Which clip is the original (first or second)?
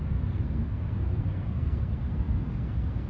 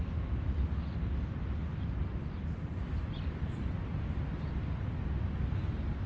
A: second